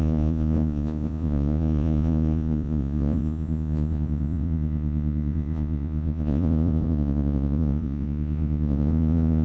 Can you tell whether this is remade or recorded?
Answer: remade